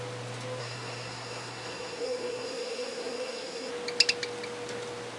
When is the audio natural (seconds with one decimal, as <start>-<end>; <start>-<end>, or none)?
0.0-0.6; 3.7-5.2